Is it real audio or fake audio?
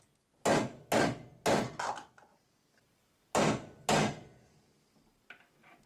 real